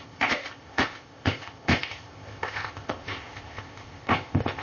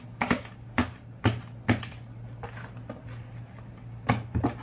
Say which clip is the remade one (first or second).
first